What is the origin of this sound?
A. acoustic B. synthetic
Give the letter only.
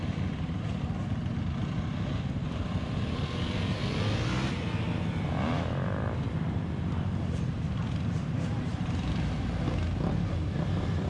A